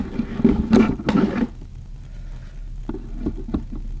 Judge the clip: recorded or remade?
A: recorded